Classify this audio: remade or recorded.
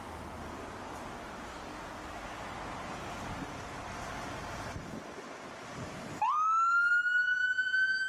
recorded